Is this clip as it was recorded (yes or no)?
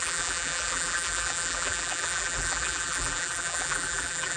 no